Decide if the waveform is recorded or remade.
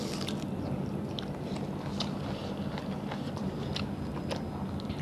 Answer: recorded